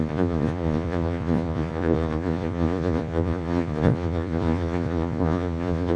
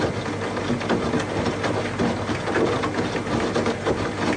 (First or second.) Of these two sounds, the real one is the second